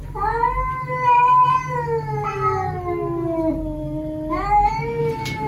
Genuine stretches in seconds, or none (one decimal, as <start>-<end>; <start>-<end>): 0.0-5.5